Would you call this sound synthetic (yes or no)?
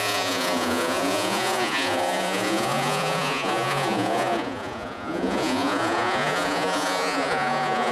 yes